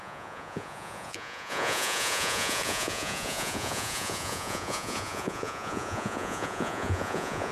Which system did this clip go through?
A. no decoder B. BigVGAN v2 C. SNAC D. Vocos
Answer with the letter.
D